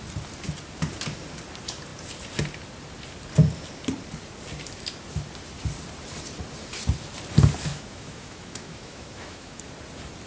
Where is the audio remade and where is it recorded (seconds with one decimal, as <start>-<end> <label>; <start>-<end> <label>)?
0.0-7.7 recorded; 7.7-9.6 remade; 9.6-10.3 recorded